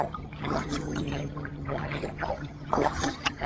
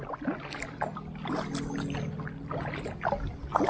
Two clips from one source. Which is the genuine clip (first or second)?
second